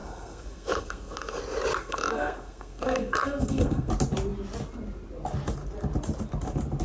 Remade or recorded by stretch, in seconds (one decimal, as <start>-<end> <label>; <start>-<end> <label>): 0.0-1.4 remade; 1.4-1.8 recorded; 1.8-3.9 remade; 3.9-6.8 recorded